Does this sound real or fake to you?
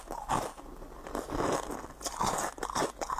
real